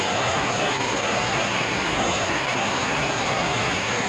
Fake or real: fake